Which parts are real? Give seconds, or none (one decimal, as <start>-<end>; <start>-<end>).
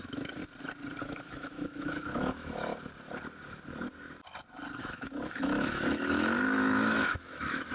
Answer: 0.4-1.0; 2.7-4.8